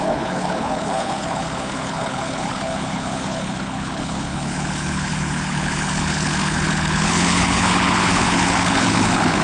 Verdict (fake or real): fake